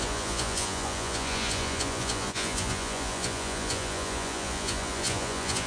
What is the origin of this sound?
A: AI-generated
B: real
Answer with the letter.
A